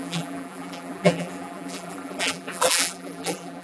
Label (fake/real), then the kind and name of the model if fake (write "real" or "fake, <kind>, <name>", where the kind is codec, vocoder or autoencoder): fake, vocoder, BigVGAN v2